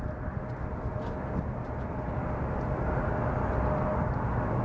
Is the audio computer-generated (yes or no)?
no